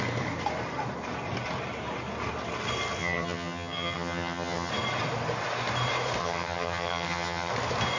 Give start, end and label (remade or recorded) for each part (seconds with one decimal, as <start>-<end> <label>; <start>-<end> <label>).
0.0-3.0 recorded; 3.0-4.7 remade; 4.7-6.2 recorded; 6.2-7.5 remade; 7.5-8.0 recorded